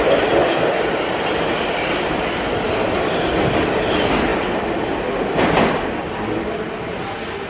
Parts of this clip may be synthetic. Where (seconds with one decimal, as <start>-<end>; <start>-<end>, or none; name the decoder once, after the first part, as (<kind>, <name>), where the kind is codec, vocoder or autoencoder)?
none